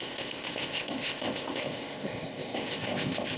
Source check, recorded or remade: remade